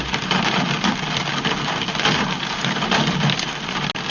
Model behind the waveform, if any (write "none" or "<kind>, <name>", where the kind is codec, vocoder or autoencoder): none